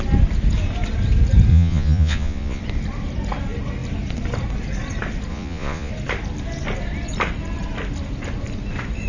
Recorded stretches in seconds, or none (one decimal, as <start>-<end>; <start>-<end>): 0.0-1.5; 2.6-5.3; 5.9-9.1